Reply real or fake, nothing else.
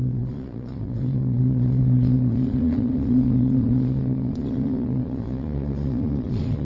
fake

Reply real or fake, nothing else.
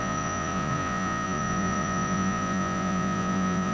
fake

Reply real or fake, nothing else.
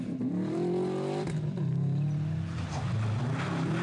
real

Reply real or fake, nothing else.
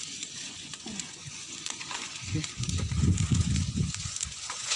fake